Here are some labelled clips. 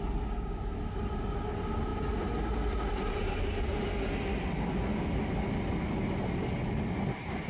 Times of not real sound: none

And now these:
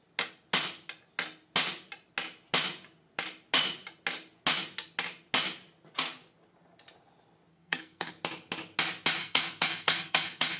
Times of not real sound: 7.5-8.1 (codec, SNAC); 9.2-10.6

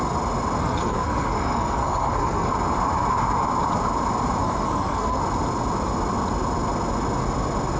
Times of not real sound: 0.6-2.5 (codec, SNAC); 4.4-5.2

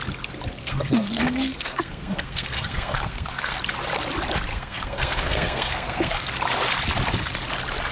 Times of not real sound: 0.6-3.6 (codec, SNAC); 4.5-6.3

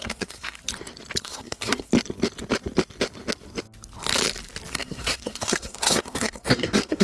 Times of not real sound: 0.0-0.6 (codec, SNAC); 1.2-1.9; 4.7-7.0

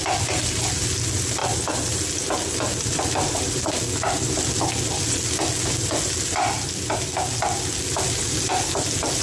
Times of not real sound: none

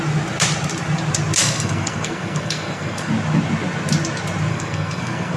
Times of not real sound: 1.4-3.1 (codec, SNAC); 4.5-5.4

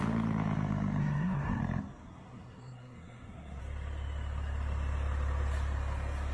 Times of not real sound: 1.0-1.6 (codec, SNAC); 2.0-3.6